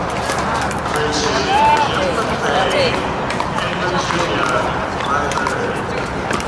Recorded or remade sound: recorded